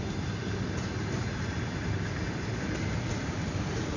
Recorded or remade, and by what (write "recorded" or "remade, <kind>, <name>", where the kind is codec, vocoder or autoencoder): recorded